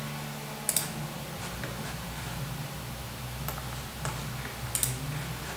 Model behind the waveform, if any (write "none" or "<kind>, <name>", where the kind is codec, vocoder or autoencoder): none